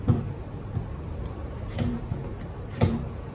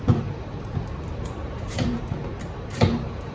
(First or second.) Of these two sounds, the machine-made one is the second